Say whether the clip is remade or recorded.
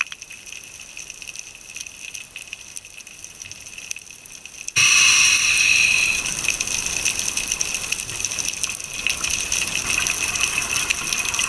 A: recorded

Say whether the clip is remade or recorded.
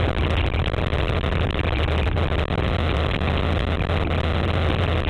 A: recorded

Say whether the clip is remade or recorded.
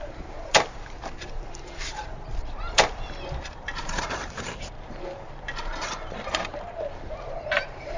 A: remade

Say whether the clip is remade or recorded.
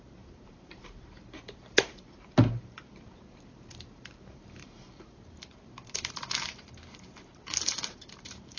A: remade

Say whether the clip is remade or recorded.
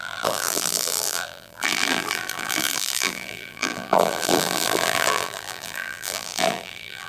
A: remade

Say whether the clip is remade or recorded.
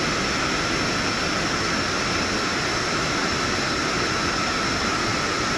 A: recorded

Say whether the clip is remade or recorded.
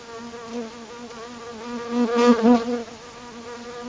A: recorded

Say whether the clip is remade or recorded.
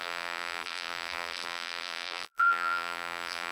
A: remade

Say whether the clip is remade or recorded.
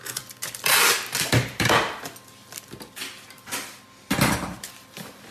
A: recorded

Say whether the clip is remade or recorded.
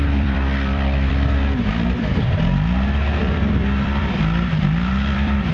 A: remade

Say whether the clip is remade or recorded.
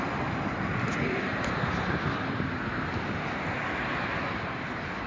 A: recorded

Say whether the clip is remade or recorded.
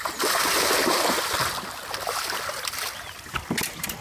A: recorded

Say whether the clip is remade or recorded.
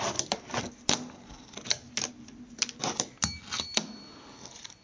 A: recorded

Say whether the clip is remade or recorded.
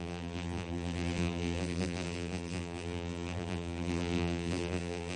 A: remade